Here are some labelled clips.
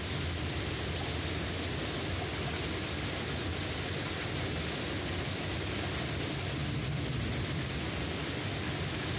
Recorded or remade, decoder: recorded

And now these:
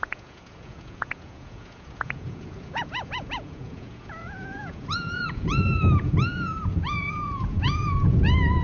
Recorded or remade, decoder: remade, vocoder, Vocos